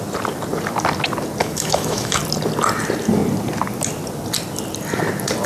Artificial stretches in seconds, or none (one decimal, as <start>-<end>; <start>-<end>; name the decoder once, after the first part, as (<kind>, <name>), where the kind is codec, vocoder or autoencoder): 1.4-2.2 (autoencoder, DAC-VAE)